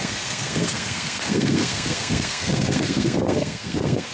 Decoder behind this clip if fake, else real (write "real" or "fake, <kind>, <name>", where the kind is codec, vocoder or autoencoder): fake, codec, SNAC